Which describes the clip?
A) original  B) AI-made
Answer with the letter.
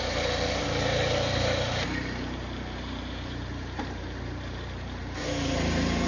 B